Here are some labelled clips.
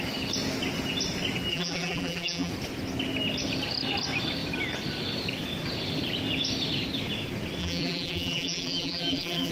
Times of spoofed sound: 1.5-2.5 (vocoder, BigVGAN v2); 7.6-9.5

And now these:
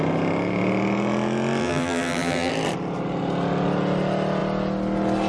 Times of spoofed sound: 1.6-2.5 (vocoder, BigVGAN v2)

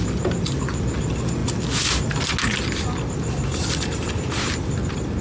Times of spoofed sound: none

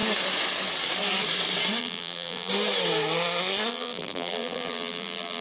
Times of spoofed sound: 1.8-2.5 (vocoder, BigVGAN v2); 3.7-5.4

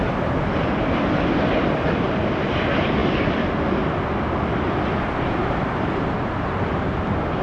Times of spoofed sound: none

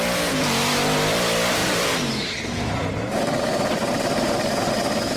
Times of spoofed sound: 1.6-4.7 (vocoder, BigVGAN v2)

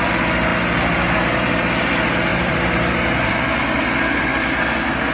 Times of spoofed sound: 2.3-3.3 (vocoder, BigVGAN v2)

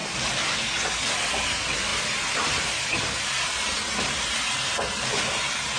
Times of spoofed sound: 1.9-5.8 (vocoder, BigVGAN v2)